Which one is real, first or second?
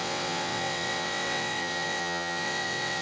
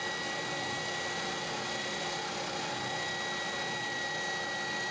second